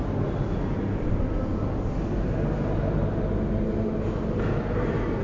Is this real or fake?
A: real